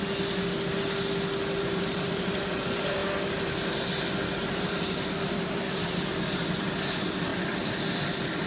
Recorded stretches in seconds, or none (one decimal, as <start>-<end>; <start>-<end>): 0.0-1.6; 3.0-4.5; 7.3-8.5